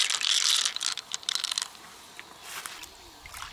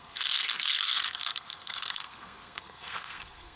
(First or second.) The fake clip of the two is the second